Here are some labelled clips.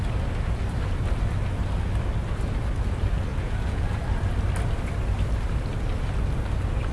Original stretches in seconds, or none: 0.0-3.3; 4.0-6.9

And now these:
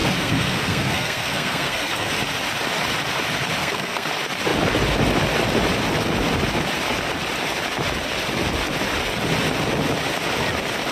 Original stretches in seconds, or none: 2.1-3.6; 4.1-10.9

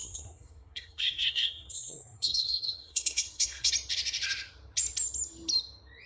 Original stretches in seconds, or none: 3.7-6.1

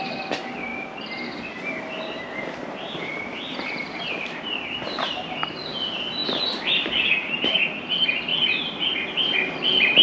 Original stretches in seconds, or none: 0.7-2.7; 8.3-8.9

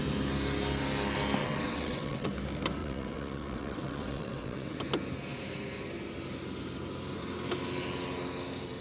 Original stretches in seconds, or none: 0.0-1.4; 2.3-2.8; 4.8-8.8

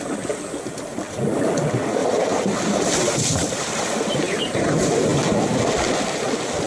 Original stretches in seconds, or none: 0.0-6.7

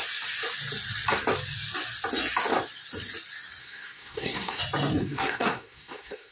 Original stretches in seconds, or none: 0.0-3.6; 4.6-5.0